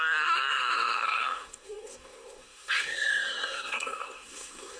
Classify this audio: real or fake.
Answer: fake